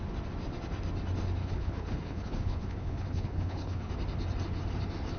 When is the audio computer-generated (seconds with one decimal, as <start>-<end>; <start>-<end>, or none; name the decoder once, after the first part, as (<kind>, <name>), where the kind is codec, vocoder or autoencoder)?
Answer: 1.4-3.9 (codec, HILCodec)